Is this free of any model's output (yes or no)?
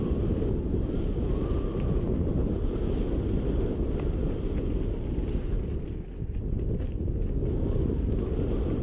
yes